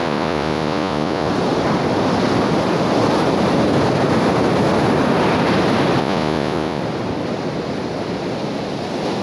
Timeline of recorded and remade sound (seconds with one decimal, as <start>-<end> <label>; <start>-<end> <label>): 0.0-1.3 remade; 1.3-6.0 recorded; 6.0-6.8 remade; 6.8-9.2 recorded